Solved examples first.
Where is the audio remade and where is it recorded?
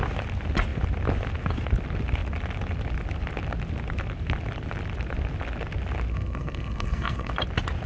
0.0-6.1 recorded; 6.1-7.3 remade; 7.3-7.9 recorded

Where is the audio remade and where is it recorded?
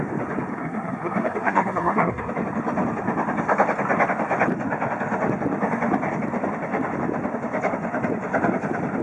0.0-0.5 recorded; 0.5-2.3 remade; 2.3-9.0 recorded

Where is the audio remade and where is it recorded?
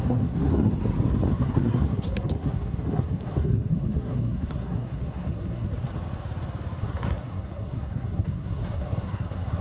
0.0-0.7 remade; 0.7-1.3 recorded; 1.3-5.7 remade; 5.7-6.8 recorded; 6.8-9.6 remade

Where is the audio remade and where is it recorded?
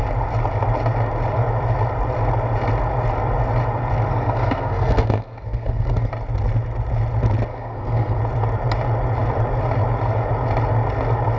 0.0-4.1 recorded; 4.1-6.1 remade; 6.1-7.5 recorded; 7.5-8.2 remade; 8.2-11.4 recorded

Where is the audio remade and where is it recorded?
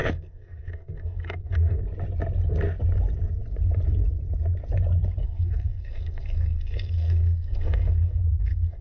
0.0-1.8 remade; 1.8-5.2 recorded; 5.2-8.8 remade